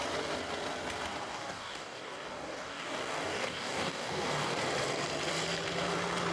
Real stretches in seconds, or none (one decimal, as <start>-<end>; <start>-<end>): 0.0-1.3; 4.6-6.3